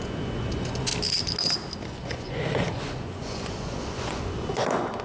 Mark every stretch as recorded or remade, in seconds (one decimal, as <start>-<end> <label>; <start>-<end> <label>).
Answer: 0.0-0.9 remade; 0.9-1.9 recorded; 1.9-5.0 remade